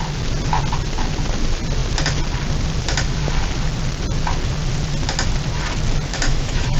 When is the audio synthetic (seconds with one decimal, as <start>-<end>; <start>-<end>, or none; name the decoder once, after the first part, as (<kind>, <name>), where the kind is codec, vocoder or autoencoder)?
6.1-6.8 (autoencoder, DAC-VAE)